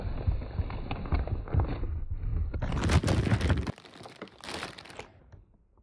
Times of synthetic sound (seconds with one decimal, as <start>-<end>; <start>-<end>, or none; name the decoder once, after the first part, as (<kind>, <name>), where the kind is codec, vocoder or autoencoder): none